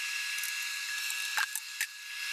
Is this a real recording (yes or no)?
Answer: yes